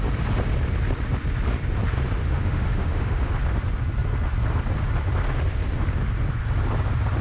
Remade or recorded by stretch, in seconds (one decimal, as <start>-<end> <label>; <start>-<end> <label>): 0.0-2.2 recorded; 2.2-3.3 remade; 3.3-7.2 recorded